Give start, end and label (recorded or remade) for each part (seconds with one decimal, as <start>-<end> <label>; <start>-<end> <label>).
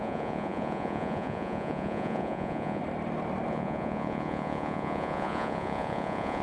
0.0-2.8 remade; 2.8-3.5 recorded; 3.5-6.4 remade